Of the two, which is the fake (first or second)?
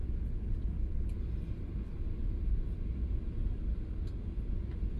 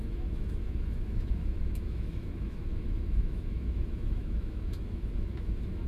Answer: second